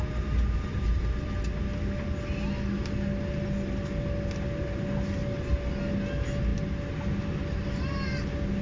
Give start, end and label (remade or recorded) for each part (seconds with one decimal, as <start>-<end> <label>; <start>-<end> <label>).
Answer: 0.0-8.6 recorded